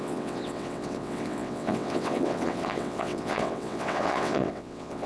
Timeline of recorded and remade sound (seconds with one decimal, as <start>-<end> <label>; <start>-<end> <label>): 0.0-5.1 remade